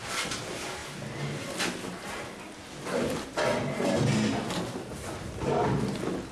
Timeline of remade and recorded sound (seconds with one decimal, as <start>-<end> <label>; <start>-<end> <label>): 0.0-6.3 recorded